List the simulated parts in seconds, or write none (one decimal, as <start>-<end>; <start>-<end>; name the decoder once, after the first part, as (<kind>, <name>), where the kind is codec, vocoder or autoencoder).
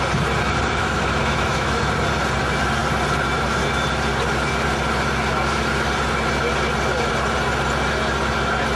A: 0.8-1.8 (autoencoder, DAC-VAE)